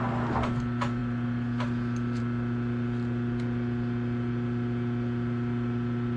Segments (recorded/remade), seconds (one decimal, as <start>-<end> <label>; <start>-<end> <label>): 0.0-6.2 recorded